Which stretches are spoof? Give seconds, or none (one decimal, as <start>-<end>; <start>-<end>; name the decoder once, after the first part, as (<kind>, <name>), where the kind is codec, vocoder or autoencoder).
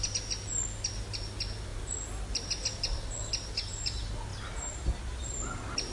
none